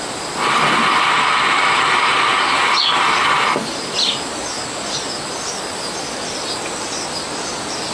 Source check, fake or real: real